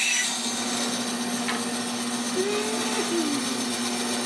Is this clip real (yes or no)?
yes